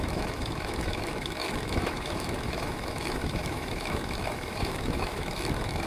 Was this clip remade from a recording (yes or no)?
yes